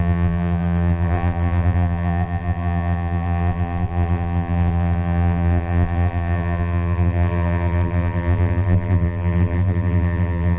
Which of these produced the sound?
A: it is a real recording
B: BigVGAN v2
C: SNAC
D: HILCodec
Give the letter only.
B